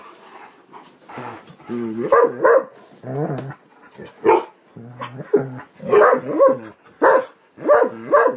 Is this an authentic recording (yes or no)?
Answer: yes